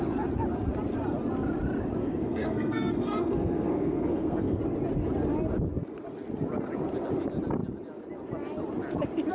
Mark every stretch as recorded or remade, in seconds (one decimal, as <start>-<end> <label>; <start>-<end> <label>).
0.0-2.0 recorded; 2.0-4.6 remade; 4.6-9.3 recorded